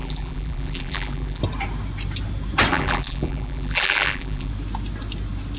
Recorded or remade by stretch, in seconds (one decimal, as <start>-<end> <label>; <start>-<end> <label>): 0.0-1.4 remade; 1.4-2.7 recorded; 2.7-4.5 remade; 4.5-5.6 recorded